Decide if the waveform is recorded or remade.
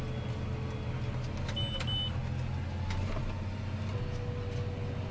recorded